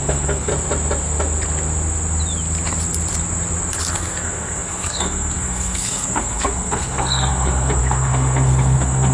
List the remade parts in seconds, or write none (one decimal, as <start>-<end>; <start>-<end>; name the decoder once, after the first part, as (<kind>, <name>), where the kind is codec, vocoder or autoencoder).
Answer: 0.0-0.5 (codec, SNAC); 3.9-9.1